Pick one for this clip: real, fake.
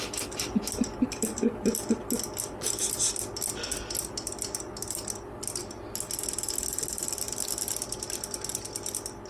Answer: real